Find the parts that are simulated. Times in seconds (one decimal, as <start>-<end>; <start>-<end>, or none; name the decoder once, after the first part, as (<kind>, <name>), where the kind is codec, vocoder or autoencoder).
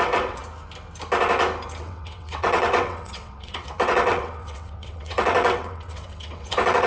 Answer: 0.0-0.4 (vocoder, WaveNeXt); 1.8-6.9